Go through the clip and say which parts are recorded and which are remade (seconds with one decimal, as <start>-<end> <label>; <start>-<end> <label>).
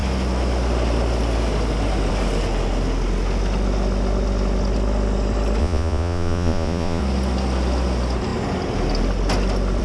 0.0-5.6 recorded; 5.6-7.0 remade; 7.0-9.8 recorded